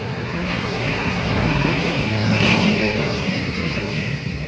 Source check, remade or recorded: remade